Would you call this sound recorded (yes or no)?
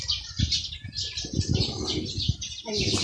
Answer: yes